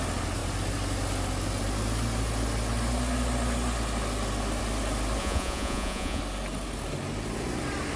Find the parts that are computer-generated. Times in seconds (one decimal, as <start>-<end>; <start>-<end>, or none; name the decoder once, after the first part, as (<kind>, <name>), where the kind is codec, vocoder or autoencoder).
5.2-6.2 (vocoder, Vocos)

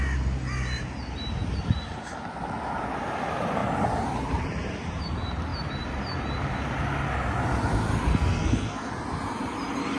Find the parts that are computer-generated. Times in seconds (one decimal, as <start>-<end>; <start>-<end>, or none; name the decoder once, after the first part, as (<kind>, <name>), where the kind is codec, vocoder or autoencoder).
8.1-8.9 (codec, SNAC)

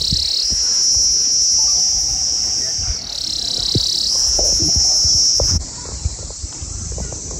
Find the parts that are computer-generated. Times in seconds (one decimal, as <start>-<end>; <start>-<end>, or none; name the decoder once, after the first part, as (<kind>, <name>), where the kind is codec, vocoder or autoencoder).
2.1-4.4 (vocoder, BigVGAN v2); 5.3-6.1

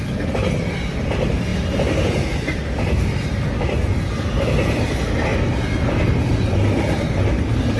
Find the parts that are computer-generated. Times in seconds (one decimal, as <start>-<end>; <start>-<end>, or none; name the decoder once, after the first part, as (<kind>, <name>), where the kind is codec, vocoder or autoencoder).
none